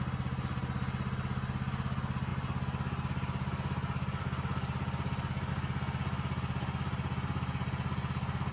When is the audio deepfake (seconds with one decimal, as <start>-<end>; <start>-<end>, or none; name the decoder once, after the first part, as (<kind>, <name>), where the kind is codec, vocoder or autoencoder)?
none